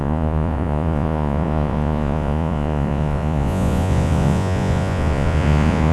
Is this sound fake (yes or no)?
yes